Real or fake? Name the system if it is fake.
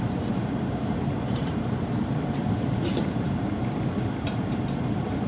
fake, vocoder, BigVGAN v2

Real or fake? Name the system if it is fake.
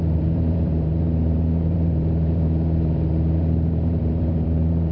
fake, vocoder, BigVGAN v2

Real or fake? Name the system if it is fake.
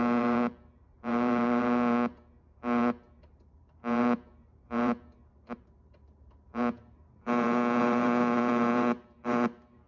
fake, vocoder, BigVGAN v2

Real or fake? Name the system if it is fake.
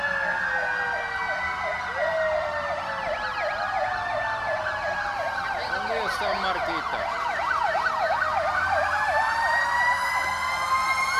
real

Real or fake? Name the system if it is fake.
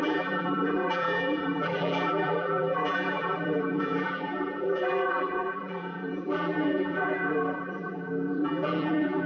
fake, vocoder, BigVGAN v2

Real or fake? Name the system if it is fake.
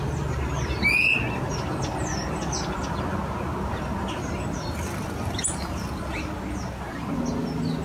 real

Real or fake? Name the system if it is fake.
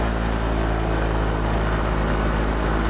real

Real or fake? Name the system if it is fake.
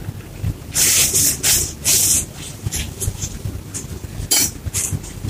real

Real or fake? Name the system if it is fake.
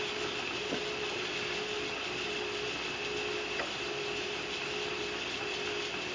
real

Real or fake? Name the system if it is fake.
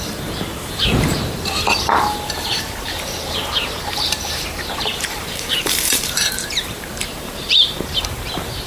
fake, vocoder, BigVGAN v2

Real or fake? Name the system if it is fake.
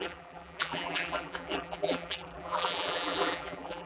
fake, vocoder, BigVGAN v2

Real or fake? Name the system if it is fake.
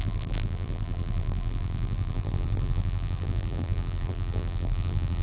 fake, vocoder, BigVGAN v2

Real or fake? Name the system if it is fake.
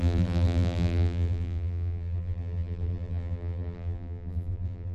fake, vocoder, BigVGAN v2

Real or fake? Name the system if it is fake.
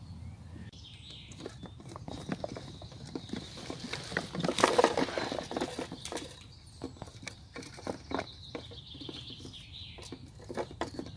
real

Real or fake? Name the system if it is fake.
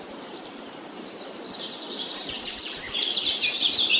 fake, vocoder, BigVGAN v2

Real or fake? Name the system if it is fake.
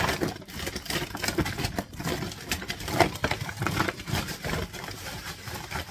fake, vocoder, BigVGAN v2